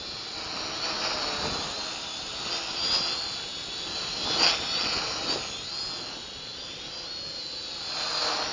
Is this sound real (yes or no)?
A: yes